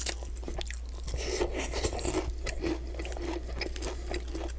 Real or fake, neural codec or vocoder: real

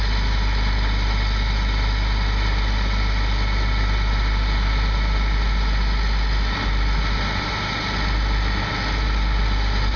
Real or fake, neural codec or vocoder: real